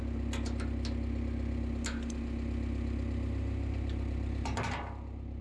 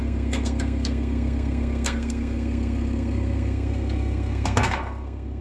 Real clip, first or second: first